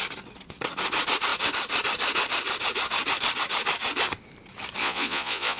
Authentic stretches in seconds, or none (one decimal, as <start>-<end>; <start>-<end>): 0.0-4.8